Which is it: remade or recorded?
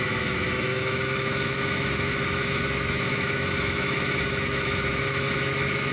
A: remade